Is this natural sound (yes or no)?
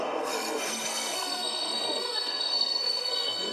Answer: no